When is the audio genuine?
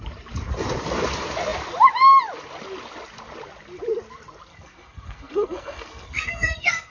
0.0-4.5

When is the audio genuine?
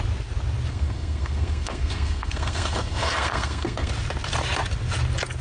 0.0-0.7; 3.9-5.4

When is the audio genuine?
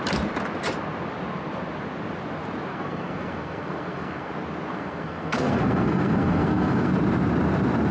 0.0-2.7; 4.3-4.7; 6.9-7.9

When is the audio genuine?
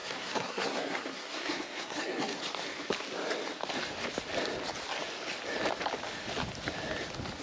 2.4-7.4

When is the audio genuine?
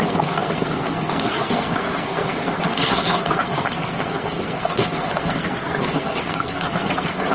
none